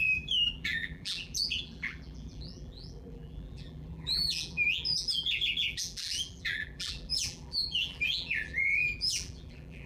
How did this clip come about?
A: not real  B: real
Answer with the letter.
A